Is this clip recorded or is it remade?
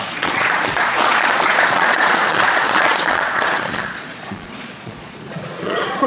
remade